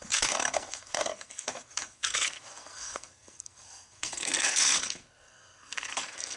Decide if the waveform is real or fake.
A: fake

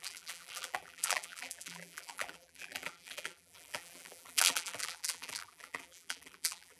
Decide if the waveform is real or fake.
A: fake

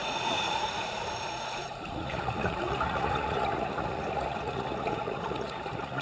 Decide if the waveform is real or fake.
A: fake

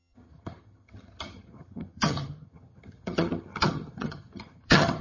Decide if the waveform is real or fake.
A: fake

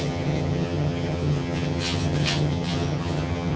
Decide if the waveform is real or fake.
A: fake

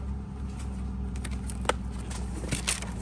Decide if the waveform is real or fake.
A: real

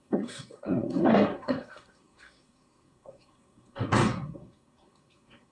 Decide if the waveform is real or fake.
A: fake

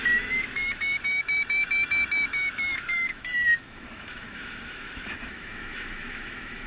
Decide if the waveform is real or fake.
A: fake